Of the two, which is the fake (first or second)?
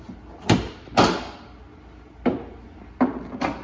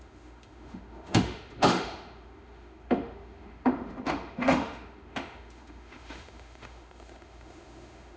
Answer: second